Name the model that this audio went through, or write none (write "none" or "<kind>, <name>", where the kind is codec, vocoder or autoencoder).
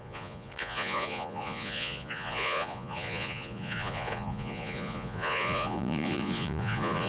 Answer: vocoder, Vocos